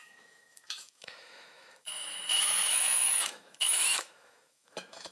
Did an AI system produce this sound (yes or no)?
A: yes